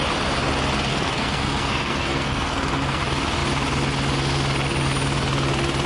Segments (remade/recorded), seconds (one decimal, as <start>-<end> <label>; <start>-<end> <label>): 0.0-0.9 recorded; 0.9-3.0 remade; 3.0-5.9 recorded